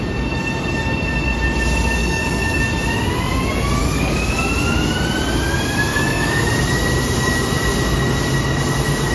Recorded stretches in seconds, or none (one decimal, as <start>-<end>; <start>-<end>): 0.0-2.0; 2.6-3.8; 4.4-5.9; 6.5-9.1